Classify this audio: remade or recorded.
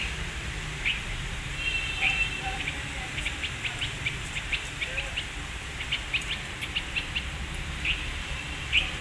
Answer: remade